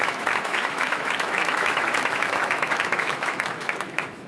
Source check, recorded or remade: remade